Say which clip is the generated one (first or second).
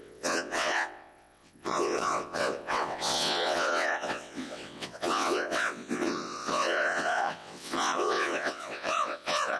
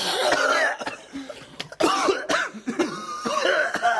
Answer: first